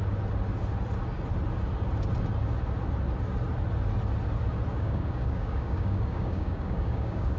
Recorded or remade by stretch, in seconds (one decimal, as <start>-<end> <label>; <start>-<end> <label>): 0.0-4.7 recorded; 4.7-7.4 remade